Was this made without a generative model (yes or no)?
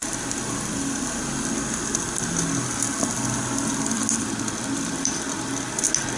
yes